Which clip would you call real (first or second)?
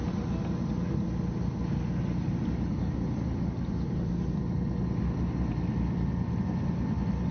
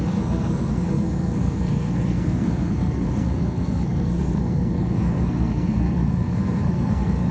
first